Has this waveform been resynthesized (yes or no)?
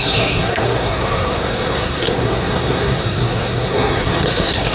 yes